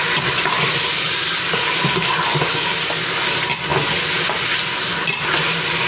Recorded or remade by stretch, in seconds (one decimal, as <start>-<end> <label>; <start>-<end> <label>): 0.0-5.9 recorded